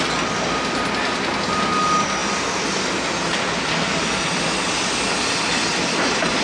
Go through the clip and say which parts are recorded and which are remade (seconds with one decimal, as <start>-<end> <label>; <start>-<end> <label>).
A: 0.0-6.4 recorded